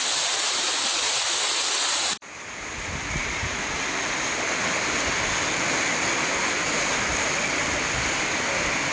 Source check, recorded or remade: remade